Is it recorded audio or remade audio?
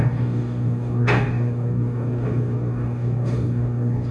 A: remade